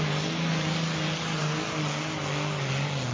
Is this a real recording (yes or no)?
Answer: yes